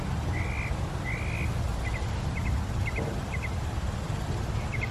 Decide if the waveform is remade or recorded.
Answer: recorded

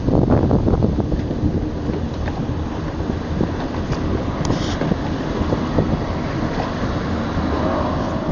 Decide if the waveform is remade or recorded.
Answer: recorded